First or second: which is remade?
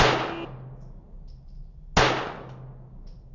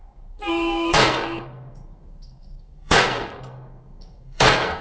second